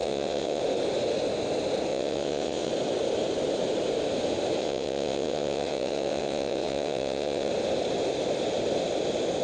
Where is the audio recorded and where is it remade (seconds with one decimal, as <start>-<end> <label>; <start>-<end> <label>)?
0.0-0.6 remade; 0.6-1.9 recorded; 1.9-2.7 remade; 2.7-4.6 recorded; 4.6-7.5 remade; 7.5-9.4 recorded